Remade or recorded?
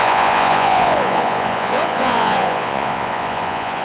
remade